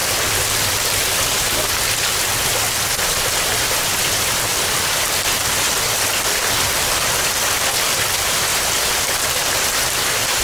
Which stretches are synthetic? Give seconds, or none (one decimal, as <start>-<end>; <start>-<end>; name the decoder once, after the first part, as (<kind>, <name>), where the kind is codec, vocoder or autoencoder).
0.0-1.4 (vocoder, BigVGAN v2); 4.5-5.7